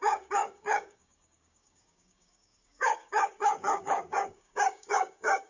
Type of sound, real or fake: fake